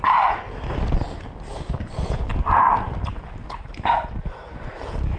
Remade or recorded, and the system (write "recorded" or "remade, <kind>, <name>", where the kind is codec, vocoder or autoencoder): recorded